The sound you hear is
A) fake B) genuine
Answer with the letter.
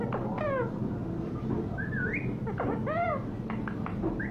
B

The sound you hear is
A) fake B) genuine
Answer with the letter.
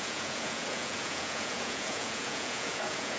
A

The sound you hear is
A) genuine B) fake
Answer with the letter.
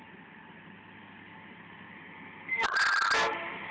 A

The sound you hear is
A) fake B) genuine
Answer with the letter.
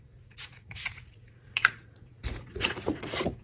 A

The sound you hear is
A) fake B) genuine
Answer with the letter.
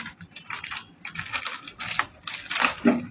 B